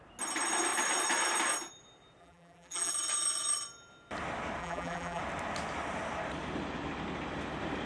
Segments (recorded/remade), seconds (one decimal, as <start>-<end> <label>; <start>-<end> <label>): 0.0-2.2 recorded; 2.2-2.9 remade; 2.9-4.6 recorded; 4.6-5.2 remade; 5.2-7.9 recorded